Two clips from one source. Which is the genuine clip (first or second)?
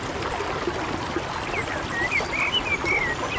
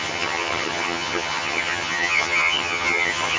first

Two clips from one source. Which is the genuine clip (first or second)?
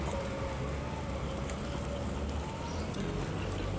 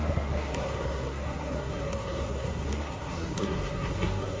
first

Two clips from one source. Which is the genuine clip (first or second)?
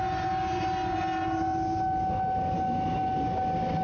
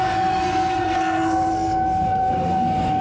first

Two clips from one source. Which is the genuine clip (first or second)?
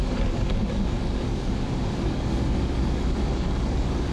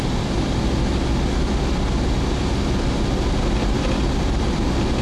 second